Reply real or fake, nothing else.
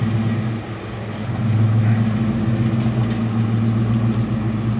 real